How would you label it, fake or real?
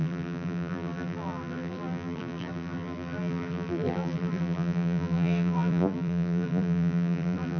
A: fake